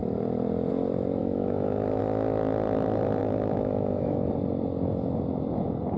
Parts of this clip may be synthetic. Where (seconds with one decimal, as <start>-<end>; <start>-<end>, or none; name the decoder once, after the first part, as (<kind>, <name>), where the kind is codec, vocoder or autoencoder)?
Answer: 1.2-2.0 (autoencoder, DAC-VAE); 3.2-4.3